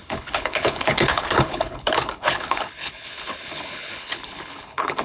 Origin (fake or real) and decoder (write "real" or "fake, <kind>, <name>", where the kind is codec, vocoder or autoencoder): fake, codec, HILCodec